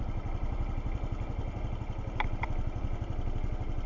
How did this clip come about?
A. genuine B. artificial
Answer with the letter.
A